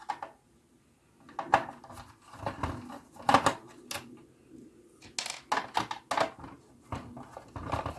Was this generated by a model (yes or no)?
no